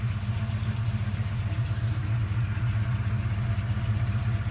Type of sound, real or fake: real